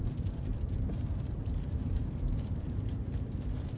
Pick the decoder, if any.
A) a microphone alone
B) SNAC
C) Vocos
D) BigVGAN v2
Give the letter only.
D